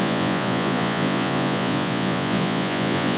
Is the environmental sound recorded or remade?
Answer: remade